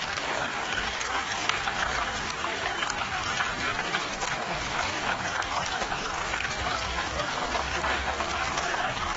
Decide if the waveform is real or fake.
fake